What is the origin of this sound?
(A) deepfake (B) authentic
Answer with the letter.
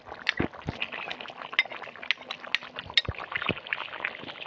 B